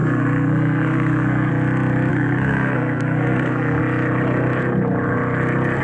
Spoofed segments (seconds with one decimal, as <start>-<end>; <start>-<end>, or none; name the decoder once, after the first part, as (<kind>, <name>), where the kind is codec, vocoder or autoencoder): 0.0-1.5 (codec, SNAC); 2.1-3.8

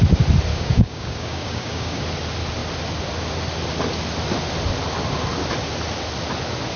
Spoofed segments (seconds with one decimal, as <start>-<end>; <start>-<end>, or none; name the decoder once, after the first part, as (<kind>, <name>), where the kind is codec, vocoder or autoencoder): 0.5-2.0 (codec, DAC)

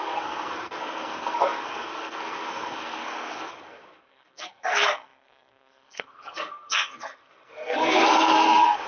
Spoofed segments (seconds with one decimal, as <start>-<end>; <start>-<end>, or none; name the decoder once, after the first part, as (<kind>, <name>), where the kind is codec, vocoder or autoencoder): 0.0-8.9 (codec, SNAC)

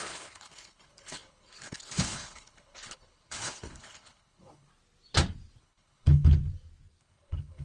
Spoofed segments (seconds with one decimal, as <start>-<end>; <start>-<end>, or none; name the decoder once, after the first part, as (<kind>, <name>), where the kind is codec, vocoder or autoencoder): 0.0-4.7 (codec, HILCodec); 5.6-6.4; 7.0-7.6